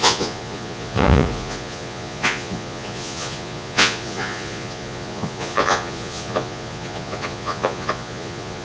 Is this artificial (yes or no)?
yes